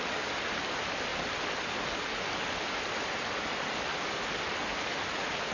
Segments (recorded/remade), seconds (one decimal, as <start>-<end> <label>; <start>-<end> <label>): 0.0-5.5 recorded